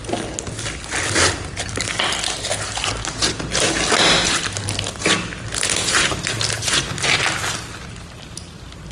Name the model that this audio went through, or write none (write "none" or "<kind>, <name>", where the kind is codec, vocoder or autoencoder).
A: none